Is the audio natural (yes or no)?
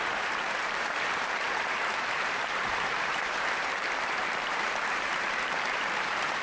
no